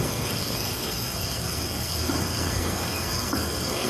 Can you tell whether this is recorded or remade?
remade